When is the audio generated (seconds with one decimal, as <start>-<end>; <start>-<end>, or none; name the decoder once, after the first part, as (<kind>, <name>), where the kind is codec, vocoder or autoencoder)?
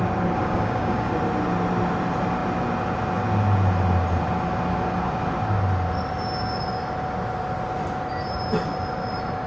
0.4-1.1 (codec, DAC)